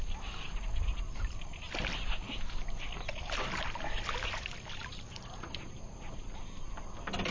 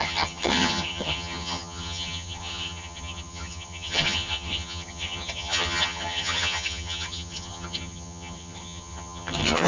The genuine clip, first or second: first